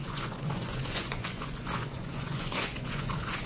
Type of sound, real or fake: fake